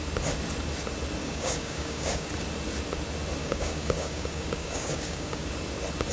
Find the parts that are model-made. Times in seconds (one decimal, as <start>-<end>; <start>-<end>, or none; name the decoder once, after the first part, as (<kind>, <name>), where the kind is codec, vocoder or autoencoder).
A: 1.2-2.3 (codec, DAC); 3.4-5.5